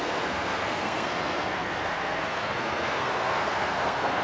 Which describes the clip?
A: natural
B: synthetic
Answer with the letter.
B